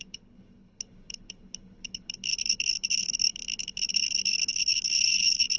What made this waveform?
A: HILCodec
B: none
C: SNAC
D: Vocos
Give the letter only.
A